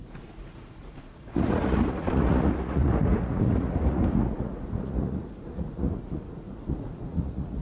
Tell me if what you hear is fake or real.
fake